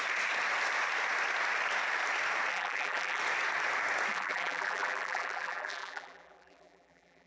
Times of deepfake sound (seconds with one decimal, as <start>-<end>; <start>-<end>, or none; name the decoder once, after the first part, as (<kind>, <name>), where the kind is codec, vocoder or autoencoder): 2.5-3.2 (vocoder, BigVGAN v2); 4.1-7.3